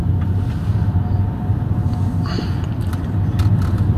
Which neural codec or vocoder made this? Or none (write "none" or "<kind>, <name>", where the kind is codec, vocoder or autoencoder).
none